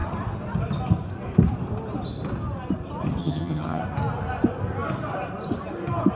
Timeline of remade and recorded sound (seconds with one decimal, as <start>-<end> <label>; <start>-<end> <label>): 0.0-3.2 recorded; 3.2-3.8 remade; 3.8-6.2 recorded

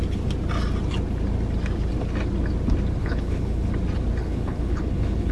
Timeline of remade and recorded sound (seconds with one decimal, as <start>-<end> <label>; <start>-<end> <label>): 0.0-3.0 recorded; 3.0-3.7 remade; 3.7-4.2 recorded; 4.2-5.3 remade

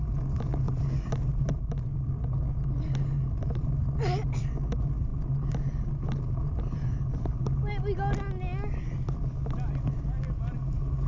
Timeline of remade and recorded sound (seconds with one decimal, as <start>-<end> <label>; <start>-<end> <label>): 0.0-11.1 recorded

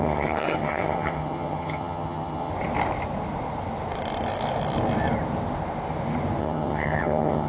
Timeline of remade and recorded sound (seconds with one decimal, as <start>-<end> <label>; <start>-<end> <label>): 0.0-2.5 remade; 2.5-6.4 recorded; 6.4-7.5 remade